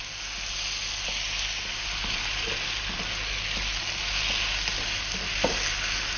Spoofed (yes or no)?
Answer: no